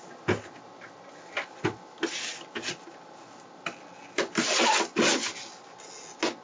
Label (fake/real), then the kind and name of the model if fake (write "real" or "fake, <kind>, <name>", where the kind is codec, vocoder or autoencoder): real